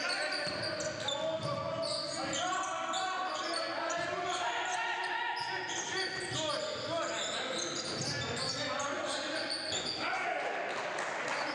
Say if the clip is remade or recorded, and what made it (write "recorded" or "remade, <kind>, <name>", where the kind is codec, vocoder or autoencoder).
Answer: recorded